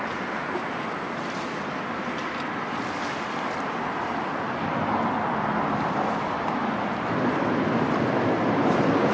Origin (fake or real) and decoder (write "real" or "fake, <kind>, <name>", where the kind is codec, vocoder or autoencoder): real